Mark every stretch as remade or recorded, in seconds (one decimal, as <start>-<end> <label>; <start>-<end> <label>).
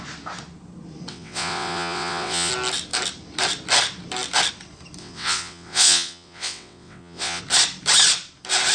0.0-1.1 recorded; 1.1-2.5 remade; 2.5-5.0 recorded; 5.0-7.4 remade; 7.4-8.7 recorded